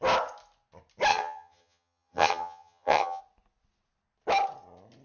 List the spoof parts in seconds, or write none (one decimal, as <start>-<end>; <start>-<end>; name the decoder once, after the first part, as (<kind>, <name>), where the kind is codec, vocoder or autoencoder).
1.1-3.2 (vocoder, HiFi-GAN)